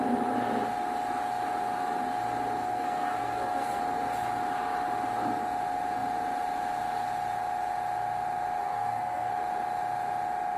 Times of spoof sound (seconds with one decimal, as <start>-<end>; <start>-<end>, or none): 2.6-3.8; 8.6-9.3